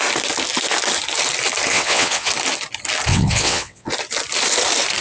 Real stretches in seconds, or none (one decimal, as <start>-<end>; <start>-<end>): 0.0-1.7; 2.3-3.1; 3.9-5.0